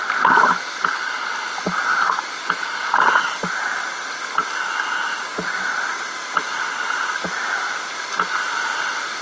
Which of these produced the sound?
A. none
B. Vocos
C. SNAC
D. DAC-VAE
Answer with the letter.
A